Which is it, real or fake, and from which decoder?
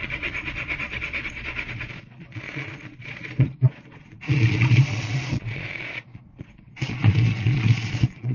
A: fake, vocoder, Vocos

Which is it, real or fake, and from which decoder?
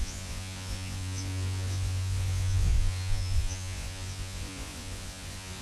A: fake, vocoder, Vocos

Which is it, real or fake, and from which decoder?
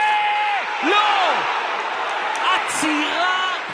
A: real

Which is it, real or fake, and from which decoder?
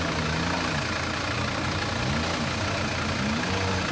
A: real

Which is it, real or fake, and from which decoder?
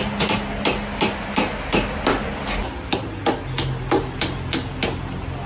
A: real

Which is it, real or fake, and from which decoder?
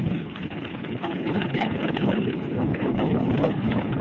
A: fake, codec, HILCodec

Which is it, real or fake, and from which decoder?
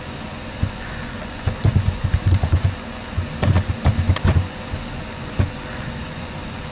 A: fake, vocoder, Vocos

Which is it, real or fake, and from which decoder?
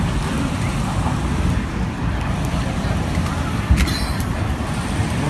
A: real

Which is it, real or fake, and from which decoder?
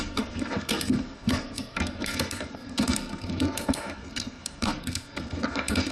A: fake, codec, SNAC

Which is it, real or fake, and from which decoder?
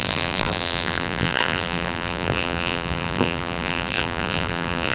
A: fake, vocoder, BigVGAN v2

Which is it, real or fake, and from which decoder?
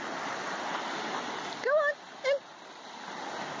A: real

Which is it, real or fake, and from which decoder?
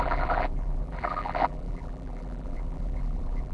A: fake, vocoder, BigVGAN v2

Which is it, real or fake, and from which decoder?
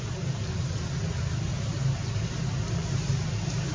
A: real